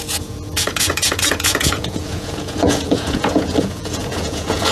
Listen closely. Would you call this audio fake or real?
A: fake